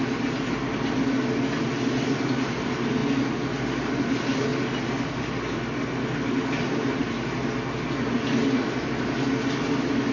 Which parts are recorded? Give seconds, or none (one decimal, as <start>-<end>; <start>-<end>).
0.0-10.1